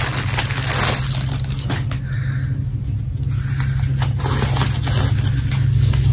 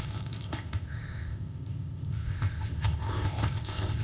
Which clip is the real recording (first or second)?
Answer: first